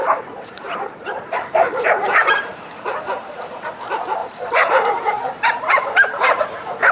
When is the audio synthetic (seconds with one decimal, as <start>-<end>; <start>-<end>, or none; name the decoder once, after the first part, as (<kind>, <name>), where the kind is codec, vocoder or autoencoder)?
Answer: 0.0-3.7 (vocoder, BigVGAN v2); 4.2-6.4